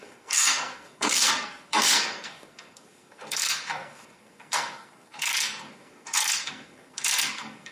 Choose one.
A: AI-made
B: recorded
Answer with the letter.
A